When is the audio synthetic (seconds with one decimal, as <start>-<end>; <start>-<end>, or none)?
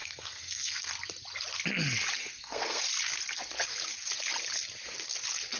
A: 0.0-1.0; 2.2-2.8